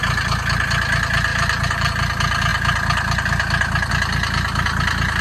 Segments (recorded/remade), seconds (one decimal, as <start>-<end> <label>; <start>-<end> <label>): 0.0-1.3 recorded; 1.3-1.9 remade; 1.9-5.2 recorded